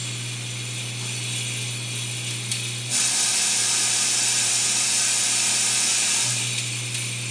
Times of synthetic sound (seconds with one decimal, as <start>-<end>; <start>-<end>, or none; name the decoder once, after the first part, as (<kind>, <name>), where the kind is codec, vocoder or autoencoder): none